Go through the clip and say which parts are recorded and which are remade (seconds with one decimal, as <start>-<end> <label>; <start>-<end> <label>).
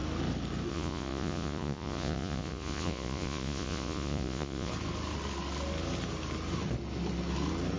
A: 0.0-0.7 recorded; 0.7-4.7 remade; 4.7-7.8 recorded